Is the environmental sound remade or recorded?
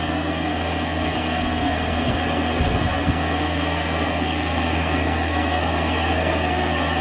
remade